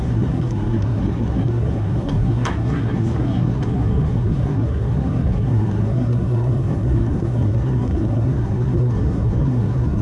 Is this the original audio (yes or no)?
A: no